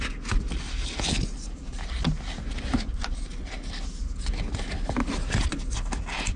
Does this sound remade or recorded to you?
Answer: recorded